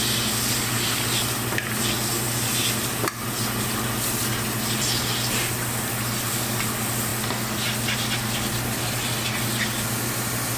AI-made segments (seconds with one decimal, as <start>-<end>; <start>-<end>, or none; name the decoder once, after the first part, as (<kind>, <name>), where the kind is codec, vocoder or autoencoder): none